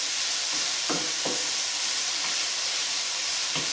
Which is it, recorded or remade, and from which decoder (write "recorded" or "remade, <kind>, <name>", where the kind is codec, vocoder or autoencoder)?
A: remade, vocoder, BigVGAN v2